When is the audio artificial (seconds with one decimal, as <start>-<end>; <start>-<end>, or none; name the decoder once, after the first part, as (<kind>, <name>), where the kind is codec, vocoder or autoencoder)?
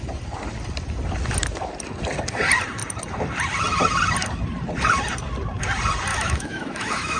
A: 6.1-7.2 (autoencoder, DAC-VAE)